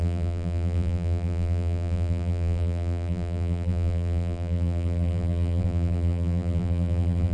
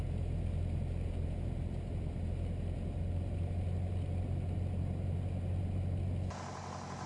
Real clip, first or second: second